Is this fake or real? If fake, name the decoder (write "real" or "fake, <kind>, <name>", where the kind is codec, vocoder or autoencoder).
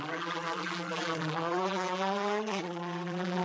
fake, vocoder, BigVGAN v2